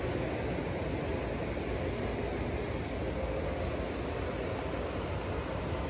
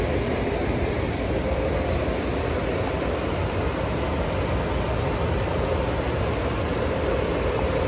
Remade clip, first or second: second